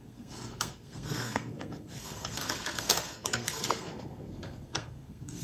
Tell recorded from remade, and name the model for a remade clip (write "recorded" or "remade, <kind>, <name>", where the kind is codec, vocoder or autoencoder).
remade, codec, SNAC